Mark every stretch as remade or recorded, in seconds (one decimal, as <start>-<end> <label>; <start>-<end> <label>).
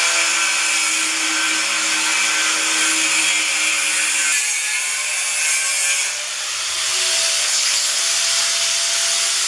0.0-7.4 recorded; 7.4-8.0 remade; 8.0-9.5 recorded